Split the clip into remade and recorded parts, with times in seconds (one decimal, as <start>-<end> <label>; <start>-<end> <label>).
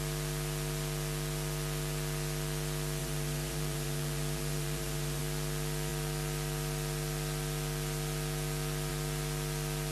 0.0-3.0 recorded; 3.0-5.2 remade; 5.2-9.9 recorded